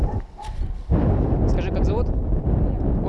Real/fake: real